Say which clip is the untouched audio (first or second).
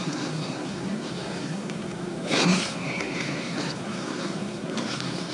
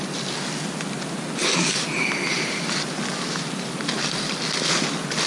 second